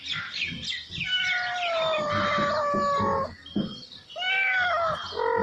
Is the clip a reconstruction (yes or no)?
no